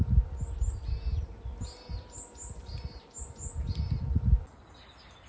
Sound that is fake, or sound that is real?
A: real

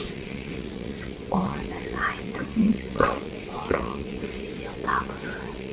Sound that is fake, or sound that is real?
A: fake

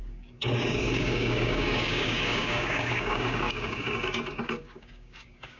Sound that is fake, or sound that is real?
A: fake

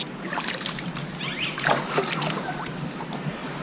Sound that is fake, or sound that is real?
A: real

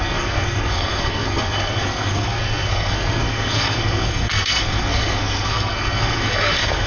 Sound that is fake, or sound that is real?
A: fake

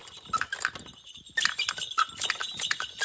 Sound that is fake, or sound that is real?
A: real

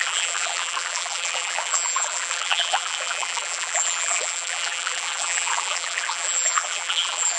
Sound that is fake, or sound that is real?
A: fake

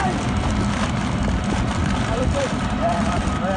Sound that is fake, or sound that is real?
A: fake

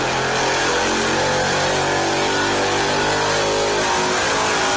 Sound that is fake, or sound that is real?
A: real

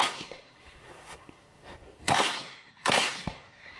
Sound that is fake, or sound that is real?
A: fake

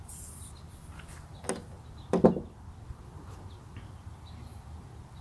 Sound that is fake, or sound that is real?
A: real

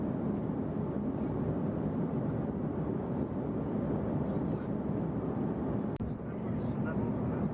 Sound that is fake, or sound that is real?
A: real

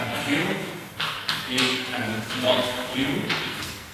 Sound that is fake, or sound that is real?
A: fake